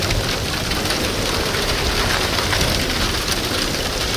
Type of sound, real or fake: real